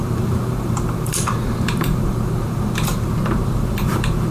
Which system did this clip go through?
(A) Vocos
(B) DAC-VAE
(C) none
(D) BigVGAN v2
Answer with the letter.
D